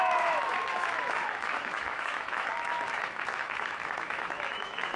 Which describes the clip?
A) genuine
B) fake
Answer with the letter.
B